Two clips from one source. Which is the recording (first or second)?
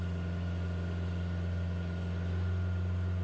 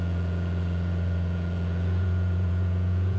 first